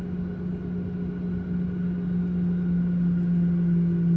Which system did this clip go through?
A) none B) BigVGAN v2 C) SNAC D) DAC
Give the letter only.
A